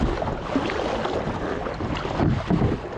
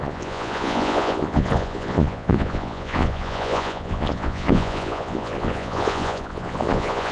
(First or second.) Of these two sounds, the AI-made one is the second